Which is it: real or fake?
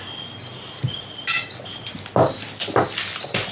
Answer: real